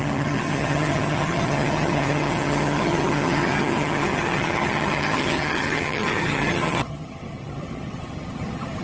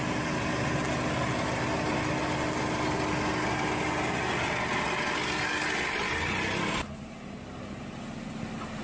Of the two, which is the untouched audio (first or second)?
second